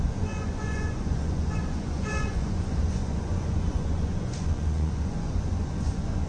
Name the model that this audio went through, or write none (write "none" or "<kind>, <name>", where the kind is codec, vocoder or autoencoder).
vocoder, Vocos